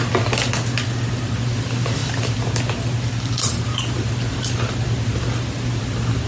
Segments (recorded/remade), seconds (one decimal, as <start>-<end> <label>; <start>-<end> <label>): 0.0-6.3 recorded